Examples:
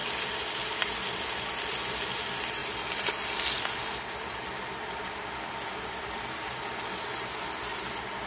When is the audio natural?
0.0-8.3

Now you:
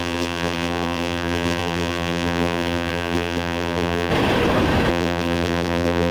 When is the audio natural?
4.1-4.9

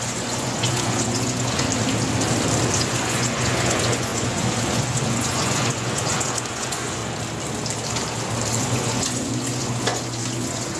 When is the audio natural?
1.7-2.8; 7.0-8.6

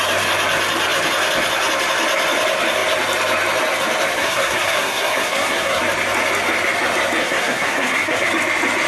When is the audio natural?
0.0-4.2; 5.8-7.2; 8.3-8.9

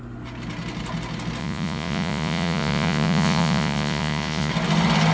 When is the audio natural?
0.0-1.4; 4.5-5.1

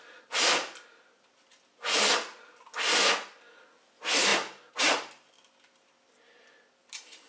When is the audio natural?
0.0-7.3

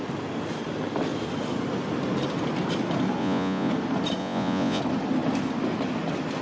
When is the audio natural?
0.0-3.2; 3.7-4.2; 4.8-6.4